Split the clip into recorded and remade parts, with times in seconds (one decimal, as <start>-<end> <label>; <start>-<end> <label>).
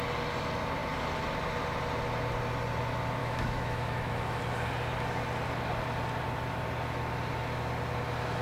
0.0-3.2 recorded; 3.2-4.4 remade; 4.4-8.4 recorded